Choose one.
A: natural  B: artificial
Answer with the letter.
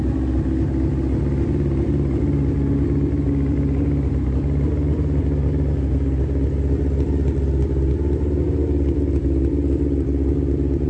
A